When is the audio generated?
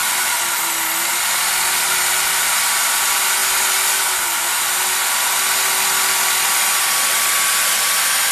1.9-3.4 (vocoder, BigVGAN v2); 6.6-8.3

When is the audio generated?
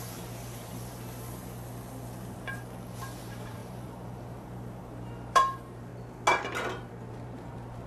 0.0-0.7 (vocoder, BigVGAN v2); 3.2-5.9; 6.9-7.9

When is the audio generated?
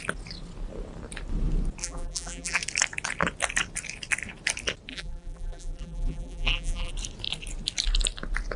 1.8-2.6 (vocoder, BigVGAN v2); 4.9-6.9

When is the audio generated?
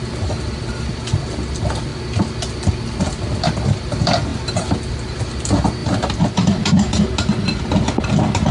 5.8-7.0 (vocoder, BigVGAN v2)